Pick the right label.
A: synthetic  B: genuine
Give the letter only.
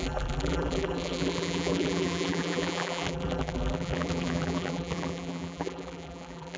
A